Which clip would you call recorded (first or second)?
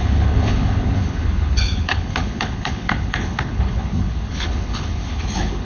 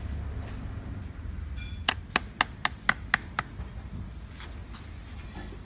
second